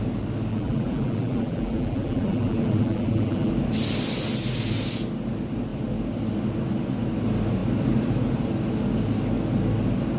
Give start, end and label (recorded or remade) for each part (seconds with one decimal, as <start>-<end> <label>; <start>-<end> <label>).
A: 0.0-0.5 recorded; 0.5-3.5 remade; 3.5-10.2 recorded